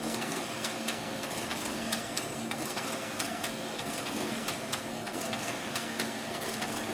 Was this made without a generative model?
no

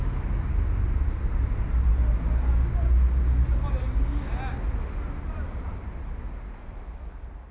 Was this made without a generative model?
yes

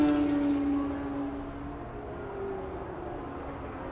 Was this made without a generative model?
yes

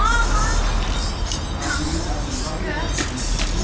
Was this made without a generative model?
yes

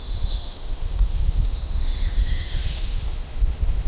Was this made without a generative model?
no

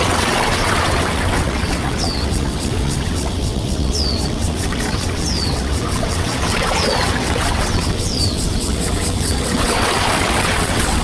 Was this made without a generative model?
no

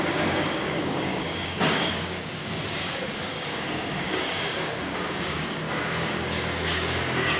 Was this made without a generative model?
no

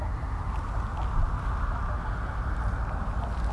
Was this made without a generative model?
yes